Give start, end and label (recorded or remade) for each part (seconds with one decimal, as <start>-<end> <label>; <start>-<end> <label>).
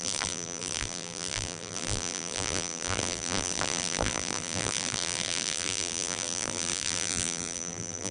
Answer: 0.0-8.1 remade